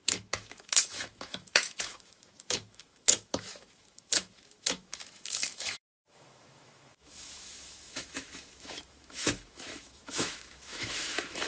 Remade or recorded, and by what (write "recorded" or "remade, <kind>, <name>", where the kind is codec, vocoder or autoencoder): remade, autoencoder, DAC-VAE